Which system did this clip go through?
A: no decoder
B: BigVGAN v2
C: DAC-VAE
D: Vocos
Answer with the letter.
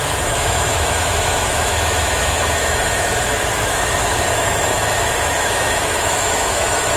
C